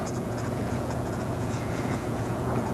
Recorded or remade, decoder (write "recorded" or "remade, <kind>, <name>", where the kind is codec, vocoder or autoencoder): remade, vocoder, Vocos